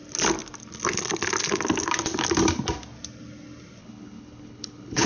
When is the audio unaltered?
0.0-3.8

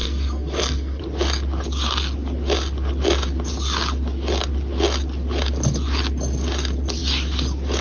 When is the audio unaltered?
1.0-7.8

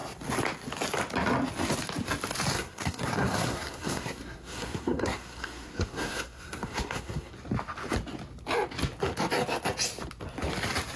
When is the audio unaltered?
0.0-2.5; 7.3-11.0

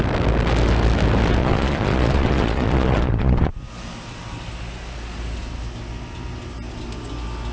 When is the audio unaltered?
0.0-1.4; 3.5-7.5

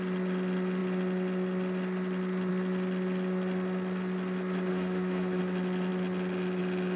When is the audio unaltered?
0.0-4.7; 5.4-7.0

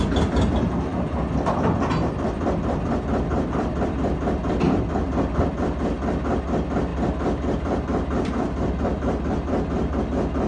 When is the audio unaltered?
0.0-0.9; 5.6-6.9; 10.0-10.5

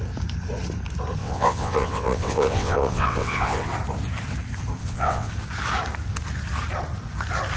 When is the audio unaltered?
0.0-1.2; 3.7-4.8; 5.3-7.6

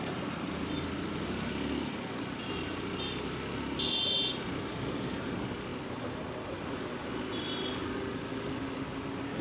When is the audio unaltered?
0.0-9.4